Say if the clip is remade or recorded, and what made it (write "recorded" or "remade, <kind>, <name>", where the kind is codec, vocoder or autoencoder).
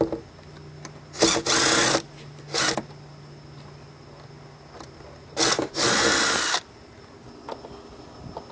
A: recorded